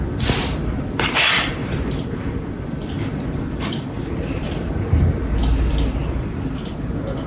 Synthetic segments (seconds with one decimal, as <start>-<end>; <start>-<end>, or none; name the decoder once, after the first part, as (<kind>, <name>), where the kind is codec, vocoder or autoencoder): 0.6-4.9 (vocoder, BigVGAN v2); 6.0-6.6